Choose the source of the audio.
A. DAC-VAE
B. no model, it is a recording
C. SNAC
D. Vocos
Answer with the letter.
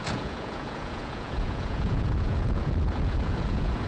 D